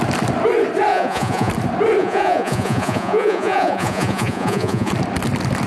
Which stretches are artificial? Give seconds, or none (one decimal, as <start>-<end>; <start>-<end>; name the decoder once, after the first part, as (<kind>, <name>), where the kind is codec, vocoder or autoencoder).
0.9-1.5 (vocoder, Vocos); 2.0-4.9